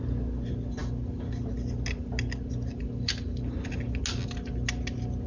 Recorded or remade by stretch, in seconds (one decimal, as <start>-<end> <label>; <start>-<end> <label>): 0.0-5.3 recorded